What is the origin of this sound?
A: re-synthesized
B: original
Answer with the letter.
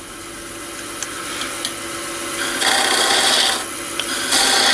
B